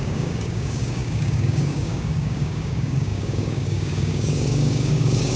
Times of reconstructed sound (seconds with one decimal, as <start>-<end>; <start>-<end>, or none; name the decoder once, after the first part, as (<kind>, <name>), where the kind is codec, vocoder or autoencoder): 0.0-5.4 (codec, DAC)